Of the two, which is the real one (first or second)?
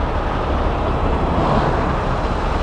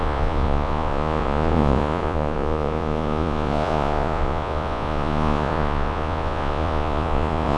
first